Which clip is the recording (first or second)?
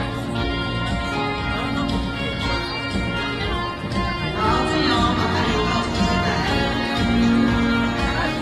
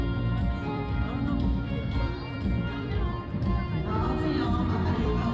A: first